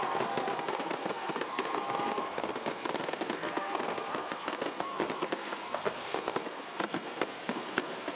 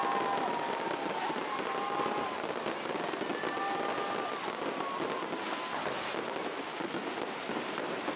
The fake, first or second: first